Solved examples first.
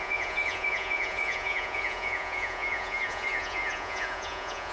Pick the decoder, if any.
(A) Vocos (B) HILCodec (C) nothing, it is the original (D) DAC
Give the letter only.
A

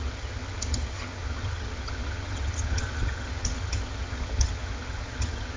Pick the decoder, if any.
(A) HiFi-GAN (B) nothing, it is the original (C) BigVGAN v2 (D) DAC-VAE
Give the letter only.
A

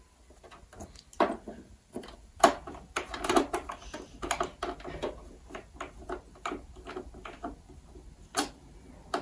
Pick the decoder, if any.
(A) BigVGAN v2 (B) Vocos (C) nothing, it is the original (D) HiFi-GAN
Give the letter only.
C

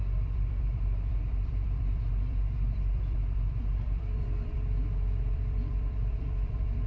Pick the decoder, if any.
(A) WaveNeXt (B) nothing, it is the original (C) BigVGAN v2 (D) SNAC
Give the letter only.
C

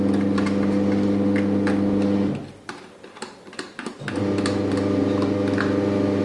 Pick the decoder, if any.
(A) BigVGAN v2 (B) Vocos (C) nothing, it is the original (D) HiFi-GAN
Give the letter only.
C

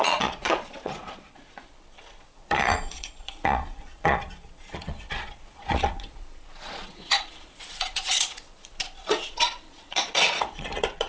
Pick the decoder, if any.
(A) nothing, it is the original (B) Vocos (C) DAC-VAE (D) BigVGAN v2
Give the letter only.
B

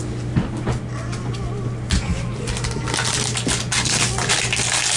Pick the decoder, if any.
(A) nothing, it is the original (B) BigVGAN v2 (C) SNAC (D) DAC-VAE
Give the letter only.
A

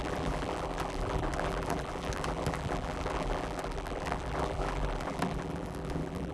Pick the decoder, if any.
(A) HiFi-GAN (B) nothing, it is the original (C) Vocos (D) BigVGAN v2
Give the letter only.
D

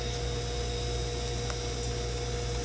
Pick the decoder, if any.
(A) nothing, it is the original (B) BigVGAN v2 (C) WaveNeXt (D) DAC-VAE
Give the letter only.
A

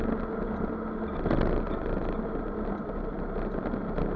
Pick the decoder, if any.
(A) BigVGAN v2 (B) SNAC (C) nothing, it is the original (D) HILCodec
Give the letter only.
C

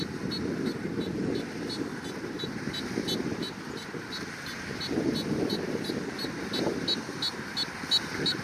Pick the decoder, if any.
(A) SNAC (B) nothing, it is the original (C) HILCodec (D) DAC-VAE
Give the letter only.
B